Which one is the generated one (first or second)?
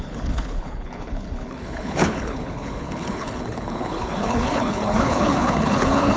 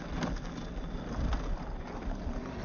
first